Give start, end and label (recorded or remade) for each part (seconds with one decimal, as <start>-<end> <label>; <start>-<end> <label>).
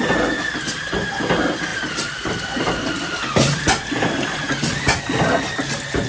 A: 0.0-1.7 recorded; 1.7-5.4 remade; 5.4-6.1 recorded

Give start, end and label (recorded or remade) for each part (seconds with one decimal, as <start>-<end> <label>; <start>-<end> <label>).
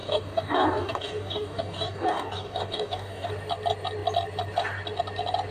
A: 0.0-3.3 remade; 3.3-5.5 recorded